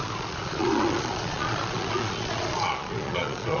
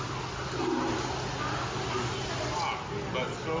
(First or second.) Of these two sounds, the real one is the second